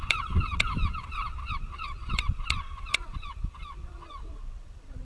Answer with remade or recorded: remade